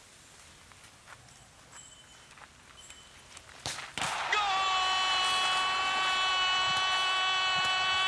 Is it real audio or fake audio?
real